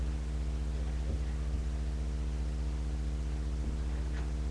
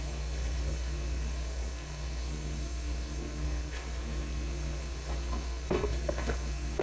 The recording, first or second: first